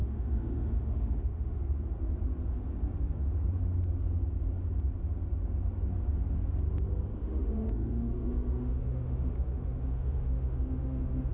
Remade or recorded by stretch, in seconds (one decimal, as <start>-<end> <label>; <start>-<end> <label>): 0.0-1.6 remade; 1.6-7.2 recorded; 7.2-11.3 remade